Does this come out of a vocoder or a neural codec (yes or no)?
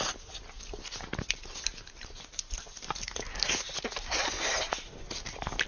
no